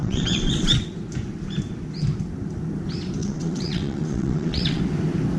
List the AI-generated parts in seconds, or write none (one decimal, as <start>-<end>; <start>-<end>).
0.0-0.9; 3.2-4.8